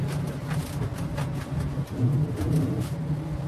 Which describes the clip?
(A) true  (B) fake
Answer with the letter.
A